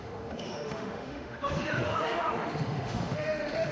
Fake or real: fake